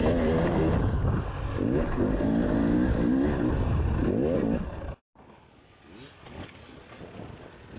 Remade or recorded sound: recorded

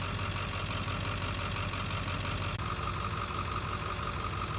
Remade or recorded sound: recorded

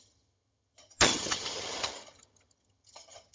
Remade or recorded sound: remade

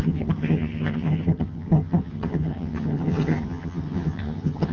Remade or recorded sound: remade